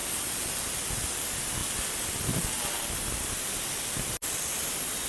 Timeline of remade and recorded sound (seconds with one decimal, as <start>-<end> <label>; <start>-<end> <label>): 0.0-5.1 recorded